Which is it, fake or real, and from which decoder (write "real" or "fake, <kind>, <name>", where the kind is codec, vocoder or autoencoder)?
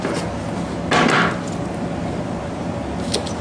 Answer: real